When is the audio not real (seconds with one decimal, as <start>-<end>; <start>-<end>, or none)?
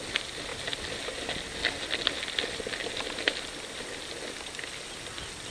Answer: none